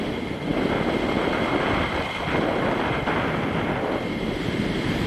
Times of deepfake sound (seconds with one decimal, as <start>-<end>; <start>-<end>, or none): 0.0-0.5; 3.6-5.1